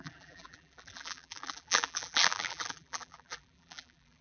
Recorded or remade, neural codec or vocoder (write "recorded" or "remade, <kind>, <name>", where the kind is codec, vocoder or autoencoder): remade, vocoder, BigVGAN v2